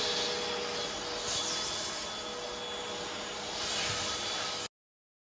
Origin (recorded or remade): recorded